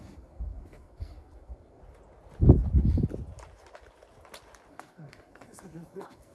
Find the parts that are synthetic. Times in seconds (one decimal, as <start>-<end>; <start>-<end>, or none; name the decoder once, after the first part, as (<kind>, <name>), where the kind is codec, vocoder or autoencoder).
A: 0.0-1.8 (codec, SNAC); 4.7-6.3